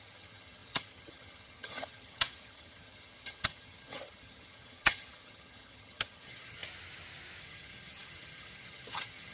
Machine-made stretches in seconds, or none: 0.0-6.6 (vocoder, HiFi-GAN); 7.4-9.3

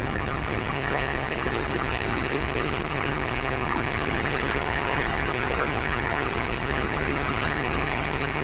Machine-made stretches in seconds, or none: 0.0-8.4 (vocoder, HiFi-GAN)

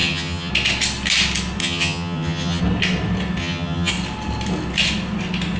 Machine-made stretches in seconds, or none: 0.0-0.5 (vocoder, HiFi-GAN); 1.6-2.6; 3.4-3.9